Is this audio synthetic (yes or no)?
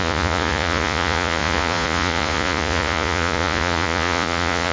yes